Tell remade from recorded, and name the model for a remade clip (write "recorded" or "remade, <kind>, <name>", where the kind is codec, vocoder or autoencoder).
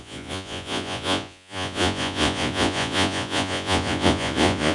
remade, vocoder, Vocos